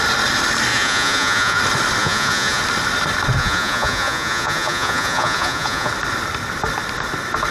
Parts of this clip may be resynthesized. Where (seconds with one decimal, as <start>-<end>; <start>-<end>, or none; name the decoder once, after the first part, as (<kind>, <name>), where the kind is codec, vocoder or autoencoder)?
0.7-1.6 (vocoder, Vocos); 2.0-2.6; 3.4-5.9